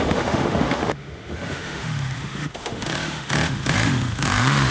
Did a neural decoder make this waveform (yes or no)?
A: yes